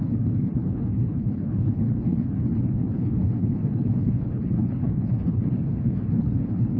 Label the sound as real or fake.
fake